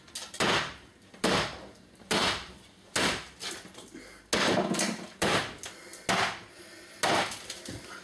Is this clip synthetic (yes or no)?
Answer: no